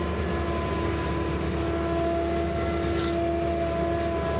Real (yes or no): yes